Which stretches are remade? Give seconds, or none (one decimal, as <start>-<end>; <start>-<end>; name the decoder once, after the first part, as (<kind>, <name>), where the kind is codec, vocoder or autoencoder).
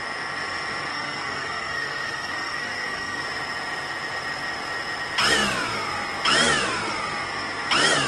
0.9-3.2 (codec, SNAC)